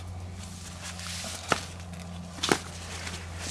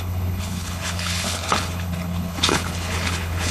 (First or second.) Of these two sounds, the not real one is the second